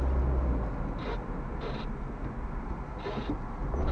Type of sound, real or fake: real